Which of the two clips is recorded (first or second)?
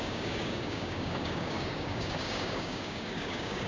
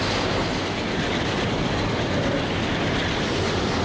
second